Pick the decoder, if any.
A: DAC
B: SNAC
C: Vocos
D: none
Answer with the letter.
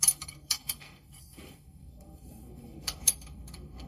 B